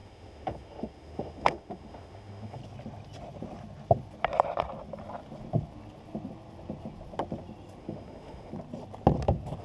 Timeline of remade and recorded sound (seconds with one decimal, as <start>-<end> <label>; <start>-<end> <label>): 0.0-2.6 remade; 2.6-7.8 recorded; 7.8-8.5 remade; 8.5-9.6 recorded